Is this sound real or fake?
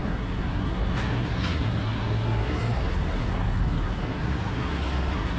fake